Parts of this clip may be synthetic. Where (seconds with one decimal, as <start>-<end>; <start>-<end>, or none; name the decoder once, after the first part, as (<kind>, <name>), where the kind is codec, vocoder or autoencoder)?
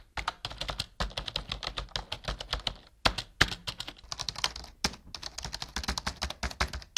none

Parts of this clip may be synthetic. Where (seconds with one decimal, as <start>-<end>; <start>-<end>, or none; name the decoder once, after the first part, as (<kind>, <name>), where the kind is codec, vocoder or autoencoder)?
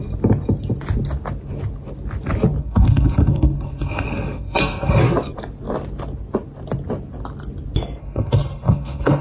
2.6-5.0 (codec, SNAC); 8.0-9.2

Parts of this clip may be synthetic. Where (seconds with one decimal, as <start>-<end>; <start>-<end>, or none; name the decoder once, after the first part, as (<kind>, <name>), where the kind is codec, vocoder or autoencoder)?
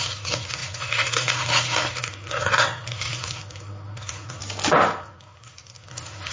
0.0-4.4 (codec, SNAC); 5.0-6.3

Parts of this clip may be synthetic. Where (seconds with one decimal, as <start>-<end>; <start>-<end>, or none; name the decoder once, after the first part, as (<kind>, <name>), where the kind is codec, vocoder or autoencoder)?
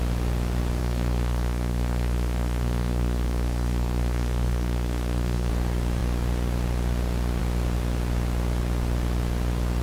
0.8-5.5 (codec, SNAC)